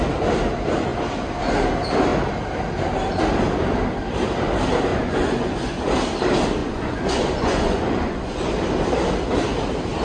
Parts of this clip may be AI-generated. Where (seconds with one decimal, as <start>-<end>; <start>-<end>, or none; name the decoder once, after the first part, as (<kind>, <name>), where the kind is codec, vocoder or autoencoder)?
4.9-5.9 (vocoder, Vocos); 6.6-8.5